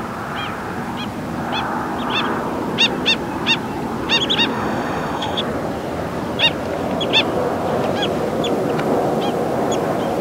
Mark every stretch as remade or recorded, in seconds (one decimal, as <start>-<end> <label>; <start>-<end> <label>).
0.0-4.5 recorded; 4.5-5.4 remade; 5.4-10.2 recorded